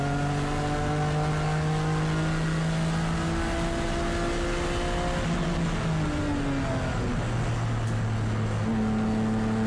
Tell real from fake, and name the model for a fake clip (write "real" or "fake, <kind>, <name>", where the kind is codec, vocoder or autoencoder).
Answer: real